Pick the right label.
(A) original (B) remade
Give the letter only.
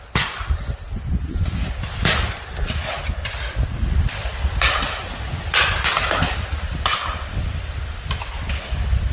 A